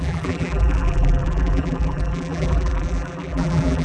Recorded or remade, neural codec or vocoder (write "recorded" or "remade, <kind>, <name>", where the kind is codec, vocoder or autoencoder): remade, vocoder, BigVGAN v2